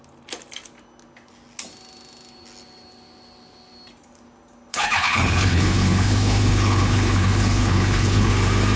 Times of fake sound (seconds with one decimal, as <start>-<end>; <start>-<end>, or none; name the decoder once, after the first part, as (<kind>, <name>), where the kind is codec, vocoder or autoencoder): 4.7-8.3 (codec, HILCodec)